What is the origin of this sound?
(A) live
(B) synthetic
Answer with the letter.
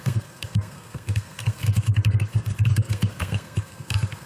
B